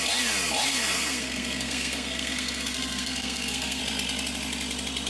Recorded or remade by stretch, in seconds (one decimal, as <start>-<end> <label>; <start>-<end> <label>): 0.0-0.7 recorded; 0.7-3.8 remade; 3.8-5.1 recorded